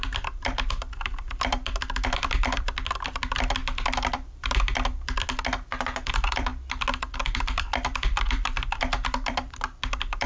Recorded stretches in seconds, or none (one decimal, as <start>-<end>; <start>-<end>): 3.6-4.1; 4.7-6.1; 6.5-7.0